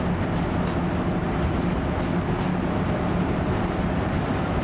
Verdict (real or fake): real